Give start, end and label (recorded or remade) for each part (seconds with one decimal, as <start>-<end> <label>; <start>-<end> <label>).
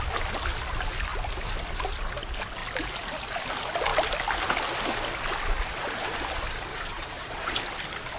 0.0-6.7 recorded; 6.7-7.6 remade; 7.6-8.2 recorded